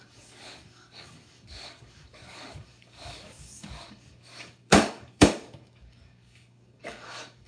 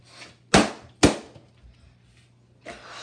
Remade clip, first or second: first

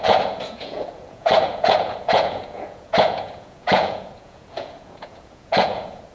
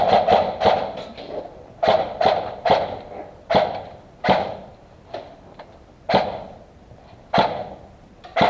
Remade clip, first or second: first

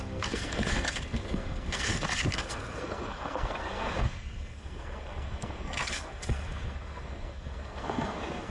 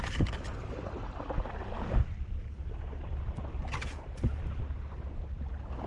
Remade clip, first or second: first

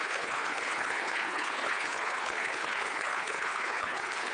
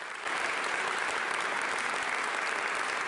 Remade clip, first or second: first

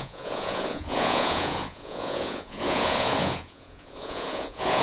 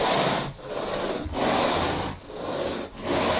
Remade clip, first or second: first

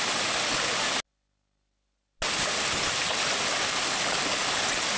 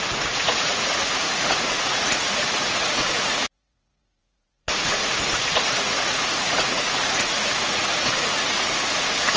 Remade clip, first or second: second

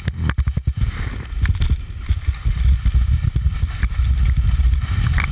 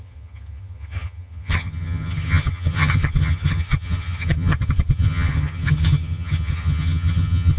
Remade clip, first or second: second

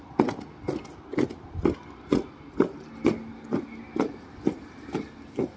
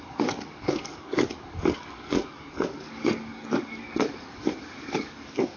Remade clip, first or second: second